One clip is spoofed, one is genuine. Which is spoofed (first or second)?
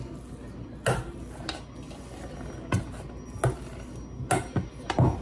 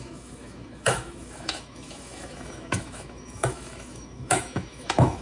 second